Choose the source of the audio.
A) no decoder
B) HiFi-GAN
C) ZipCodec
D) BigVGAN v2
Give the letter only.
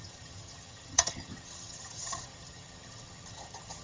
B